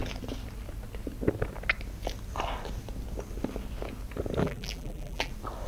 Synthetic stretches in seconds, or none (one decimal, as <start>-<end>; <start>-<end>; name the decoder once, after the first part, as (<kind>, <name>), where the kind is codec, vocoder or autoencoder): 4.4-5.3 (vocoder, BigVGAN v2)